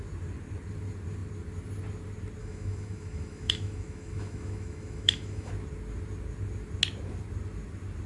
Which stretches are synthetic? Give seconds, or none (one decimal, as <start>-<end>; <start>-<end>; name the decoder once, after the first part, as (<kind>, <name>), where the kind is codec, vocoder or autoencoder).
2.4-5.5 (autoencoder, DAC-VAE)